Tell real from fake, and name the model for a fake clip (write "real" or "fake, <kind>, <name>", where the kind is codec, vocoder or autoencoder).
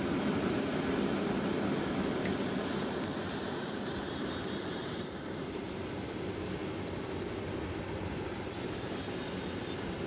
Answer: fake, vocoder, BigVGAN v2